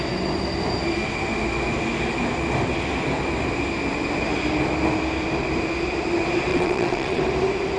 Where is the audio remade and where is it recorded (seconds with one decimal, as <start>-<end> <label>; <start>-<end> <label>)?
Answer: 0.0-6.5 recorded; 6.5-7.2 remade; 7.2-7.8 recorded